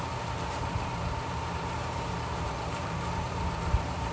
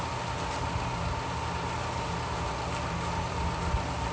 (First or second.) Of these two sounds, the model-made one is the first